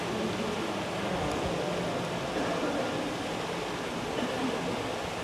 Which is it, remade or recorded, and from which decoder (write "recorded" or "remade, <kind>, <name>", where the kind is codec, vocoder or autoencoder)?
recorded